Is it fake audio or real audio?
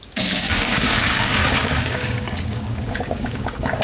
fake